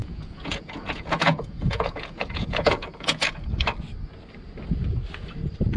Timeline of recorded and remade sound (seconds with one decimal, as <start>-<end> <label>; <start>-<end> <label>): 0.0-3.5 remade; 3.5-5.8 recorded